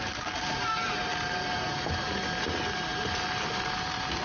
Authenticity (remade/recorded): recorded